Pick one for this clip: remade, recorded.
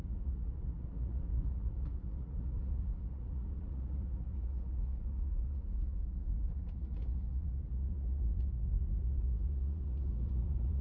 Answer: remade